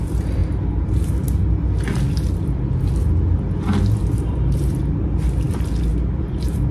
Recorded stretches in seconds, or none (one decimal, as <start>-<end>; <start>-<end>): 0.0-4.0; 4.8-5.9